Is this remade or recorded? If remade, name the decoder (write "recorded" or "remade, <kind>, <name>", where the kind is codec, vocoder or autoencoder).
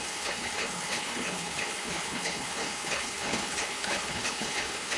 remade, codec, HILCodec